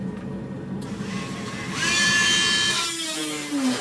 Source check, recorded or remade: remade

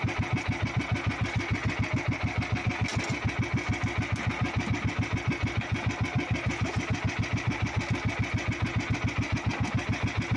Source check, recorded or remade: recorded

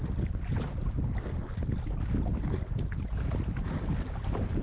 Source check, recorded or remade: recorded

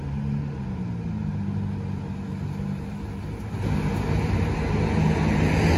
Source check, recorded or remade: recorded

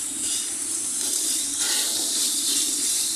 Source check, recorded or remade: remade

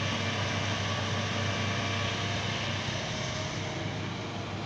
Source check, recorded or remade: recorded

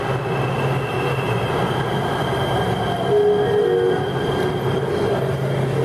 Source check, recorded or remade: recorded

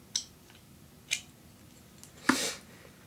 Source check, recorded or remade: recorded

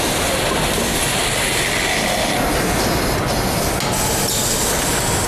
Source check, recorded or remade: recorded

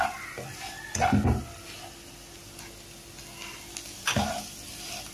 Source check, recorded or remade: recorded